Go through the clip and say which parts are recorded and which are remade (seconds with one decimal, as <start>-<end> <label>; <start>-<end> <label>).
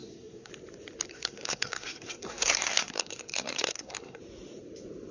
0.0-0.5 remade; 0.5-1.1 recorded; 1.1-4.2 remade; 4.2-5.1 recorded